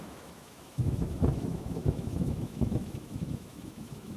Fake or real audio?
fake